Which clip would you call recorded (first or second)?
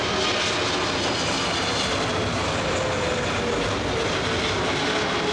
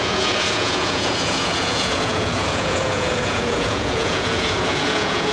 first